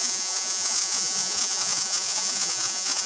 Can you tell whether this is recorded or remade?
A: remade